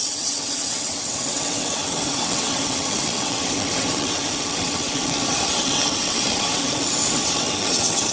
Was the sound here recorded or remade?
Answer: remade